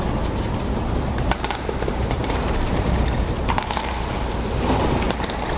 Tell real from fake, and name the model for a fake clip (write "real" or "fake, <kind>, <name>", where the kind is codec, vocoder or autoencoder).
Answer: fake, vocoder, BigVGAN v2